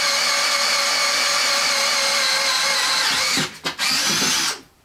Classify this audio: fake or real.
real